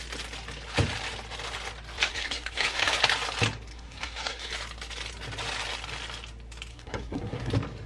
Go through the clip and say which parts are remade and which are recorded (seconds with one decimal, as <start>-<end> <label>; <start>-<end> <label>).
0.0-2.1 recorded; 2.1-3.0 remade; 3.0-3.7 recorded; 3.7-4.5 remade; 4.5-6.7 recorded; 6.7-7.5 remade; 7.5-7.9 recorded